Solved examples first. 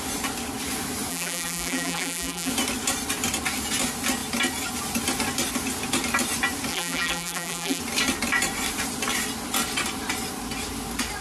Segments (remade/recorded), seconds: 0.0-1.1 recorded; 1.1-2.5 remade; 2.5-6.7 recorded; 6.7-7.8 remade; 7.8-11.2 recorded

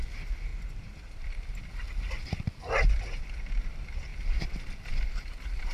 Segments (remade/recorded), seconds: 0.0-0.5 recorded; 0.5-2.1 remade; 2.1-4.1 recorded; 4.1-4.9 remade; 4.9-5.7 recorded

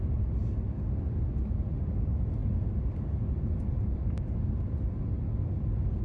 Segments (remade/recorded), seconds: 0.0-6.0 recorded

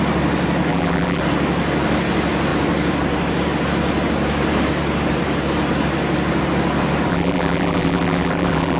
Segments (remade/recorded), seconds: 0.0-0.7 recorded; 0.7-1.2 remade; 1.2-7.1 recorded; 7.1-8.8 remade

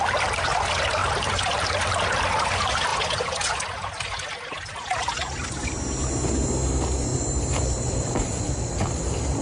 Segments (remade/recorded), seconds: 0.0-7.1 recorded; 7.1-8.4 remade; 8.4-9.4 recorded